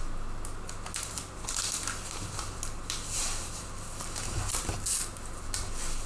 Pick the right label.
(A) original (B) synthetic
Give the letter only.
A